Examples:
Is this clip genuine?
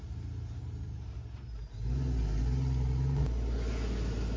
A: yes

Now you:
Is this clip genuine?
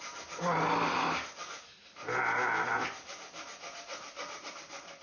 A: yes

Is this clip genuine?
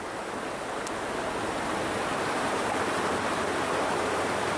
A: yes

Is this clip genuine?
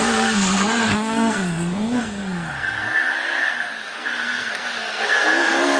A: no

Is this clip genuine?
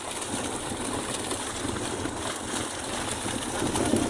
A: yes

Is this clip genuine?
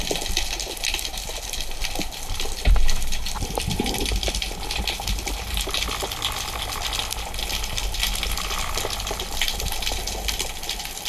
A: yes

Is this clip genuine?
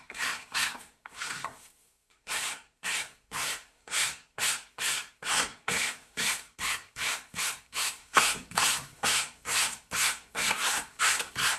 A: no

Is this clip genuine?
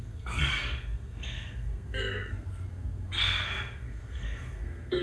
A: no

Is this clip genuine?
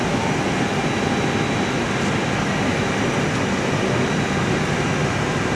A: yes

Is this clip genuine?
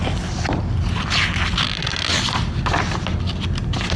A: yes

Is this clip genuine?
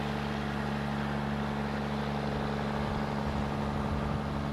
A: yes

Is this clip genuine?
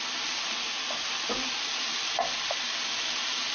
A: yes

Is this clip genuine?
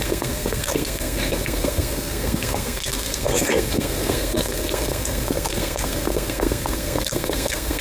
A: no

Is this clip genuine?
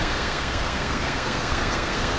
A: no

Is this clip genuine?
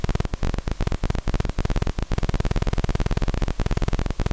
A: yes